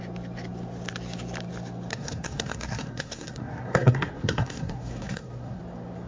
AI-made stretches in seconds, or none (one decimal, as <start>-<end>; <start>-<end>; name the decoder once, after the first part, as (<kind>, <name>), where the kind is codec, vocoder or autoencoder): 1.9-5.6 (codec, SNAC)